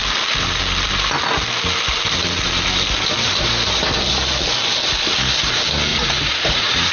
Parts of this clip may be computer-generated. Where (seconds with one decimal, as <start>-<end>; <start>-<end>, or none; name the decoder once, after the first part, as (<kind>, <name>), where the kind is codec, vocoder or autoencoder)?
5.9-6.9 (vocoder, Vocos)